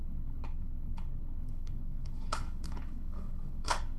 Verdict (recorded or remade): remade